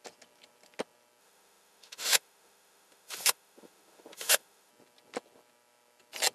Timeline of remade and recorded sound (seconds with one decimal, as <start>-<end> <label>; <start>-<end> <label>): 0.0-1.2 recorded; 1.2-4.7 remade; 4.7-6.3 recorded